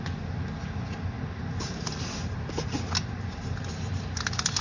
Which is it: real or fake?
real